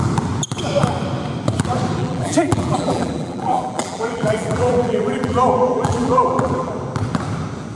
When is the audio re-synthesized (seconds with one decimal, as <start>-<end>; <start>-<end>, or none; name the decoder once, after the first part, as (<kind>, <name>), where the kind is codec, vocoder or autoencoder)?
2.0-6.7 (vocoder, BigVGAN v2)